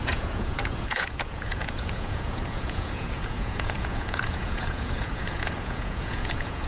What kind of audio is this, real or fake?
fake